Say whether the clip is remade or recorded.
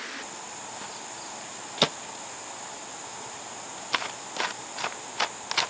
recorded